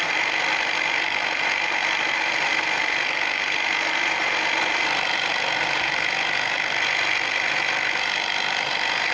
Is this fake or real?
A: real